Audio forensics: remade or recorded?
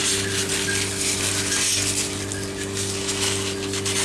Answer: recorded